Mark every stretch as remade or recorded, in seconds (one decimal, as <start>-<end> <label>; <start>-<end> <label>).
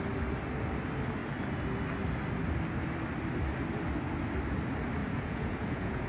0.0-5.0 recorded; 5.0-6.1 remade